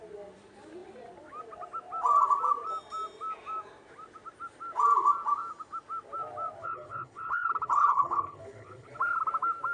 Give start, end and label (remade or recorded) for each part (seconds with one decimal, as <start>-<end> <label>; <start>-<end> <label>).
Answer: 0.0-6.6 recorded; 6.6-9.0 remade; 9.0-9.7 recorded

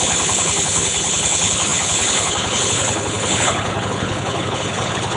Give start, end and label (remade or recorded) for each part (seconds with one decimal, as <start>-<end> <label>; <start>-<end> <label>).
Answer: 0.0-5.2 remade